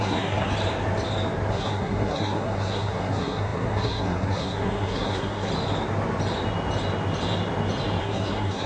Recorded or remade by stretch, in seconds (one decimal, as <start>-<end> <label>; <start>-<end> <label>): 0.0-0.5 remade; 0.5-1.5 recorded; 1.5-5.5 remade; 5.5-8.0 recorded; 8.0-8.7 remade